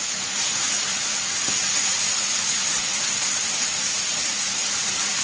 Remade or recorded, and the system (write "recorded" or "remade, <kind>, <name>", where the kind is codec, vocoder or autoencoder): remade, vocoder, Vocos